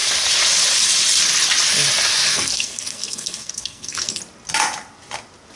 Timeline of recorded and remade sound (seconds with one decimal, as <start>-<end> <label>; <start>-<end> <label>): 0.0-2.3 recorded; 2.3-4.2 remade; 4.2-5.6 recorded